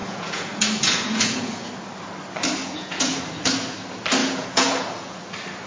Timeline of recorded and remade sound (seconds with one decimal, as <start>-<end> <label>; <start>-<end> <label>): 0.0-1.7 remade; 1.7-2.6 recorded; 2.6-3.2 remade; 3.2-4.2 recorded; 4.2-5.2 remade; 5.2-5.7 recorded